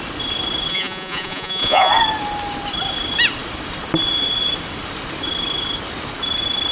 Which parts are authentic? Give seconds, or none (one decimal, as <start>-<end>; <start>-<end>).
0.0-0.7; 1.9-6.7